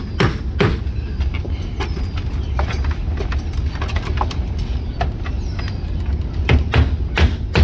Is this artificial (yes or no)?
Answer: no